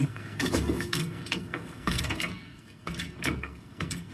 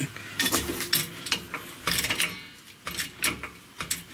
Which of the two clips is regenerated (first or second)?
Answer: first